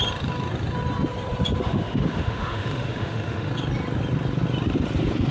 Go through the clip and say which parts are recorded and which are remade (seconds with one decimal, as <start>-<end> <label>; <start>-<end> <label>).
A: 0.0-1.6 recorded; 1.6-3.5 remade; 3.5-5.3 recorded